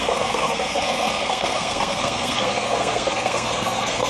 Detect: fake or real fake